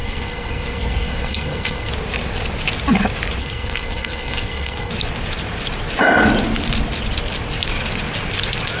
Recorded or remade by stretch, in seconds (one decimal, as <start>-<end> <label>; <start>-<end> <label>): 0.0-1.9 remade; 1.9-3.4 recorded; 3.4-4.9 remade; 4.9-8.8 recorded